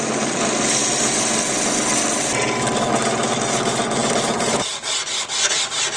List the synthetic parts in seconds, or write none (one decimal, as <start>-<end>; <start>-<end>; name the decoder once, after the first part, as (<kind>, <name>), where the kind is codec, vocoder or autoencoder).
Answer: none